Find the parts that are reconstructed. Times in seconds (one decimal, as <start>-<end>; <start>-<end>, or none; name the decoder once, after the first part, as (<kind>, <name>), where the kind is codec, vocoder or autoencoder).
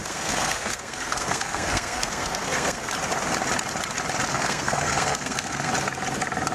0.0-2.9 (codec, SNAC); 4.3-5.7